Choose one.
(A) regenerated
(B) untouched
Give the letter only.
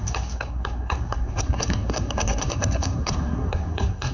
A